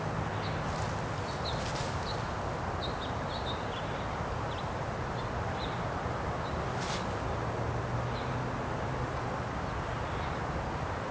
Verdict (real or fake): real